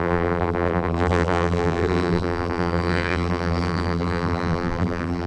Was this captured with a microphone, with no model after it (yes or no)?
no